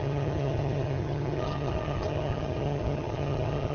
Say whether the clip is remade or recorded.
remade